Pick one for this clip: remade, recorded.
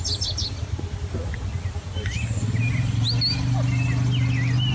recorded